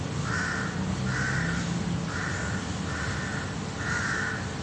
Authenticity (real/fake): real